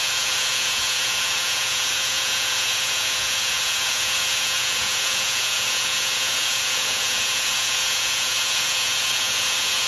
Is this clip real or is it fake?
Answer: fake